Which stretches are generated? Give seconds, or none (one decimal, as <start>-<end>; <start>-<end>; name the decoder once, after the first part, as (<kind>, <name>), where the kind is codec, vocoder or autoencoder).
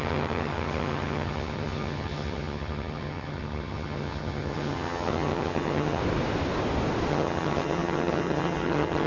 0.0-6.0 (vocoder, HiFi-GAN); 7.1-9.1